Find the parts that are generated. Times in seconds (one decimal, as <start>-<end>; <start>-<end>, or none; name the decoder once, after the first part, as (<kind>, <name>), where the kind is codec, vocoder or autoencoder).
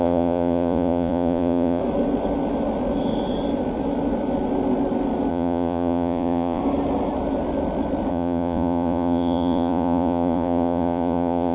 0.0-1.8 (vocoder, Vocos); 5.3-6.6; 8.1-11.5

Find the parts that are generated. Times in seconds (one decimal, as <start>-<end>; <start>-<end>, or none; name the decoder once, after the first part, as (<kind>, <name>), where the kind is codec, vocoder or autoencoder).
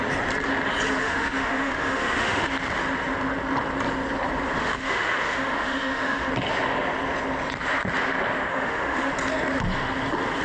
1.0-2.5 (autoencoder, DAC-VAE); 4.6-6.3; 8.5-9.1